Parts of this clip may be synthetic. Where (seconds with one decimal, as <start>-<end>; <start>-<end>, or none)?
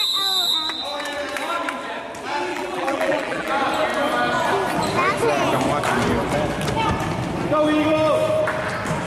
2.5-3.5